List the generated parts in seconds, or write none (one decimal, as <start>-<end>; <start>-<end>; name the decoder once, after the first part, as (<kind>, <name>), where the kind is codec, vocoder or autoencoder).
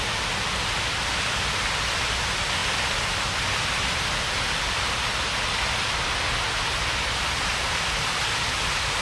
none